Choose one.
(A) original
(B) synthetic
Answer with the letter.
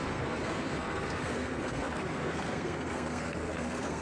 B